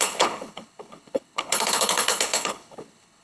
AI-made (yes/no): yes